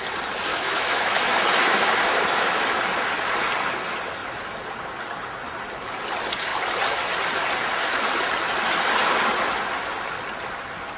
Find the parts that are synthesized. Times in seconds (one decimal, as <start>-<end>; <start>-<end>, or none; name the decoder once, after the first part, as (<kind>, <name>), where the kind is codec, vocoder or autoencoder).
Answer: 0.5-2.5 (autoencoder, DAC-VAE)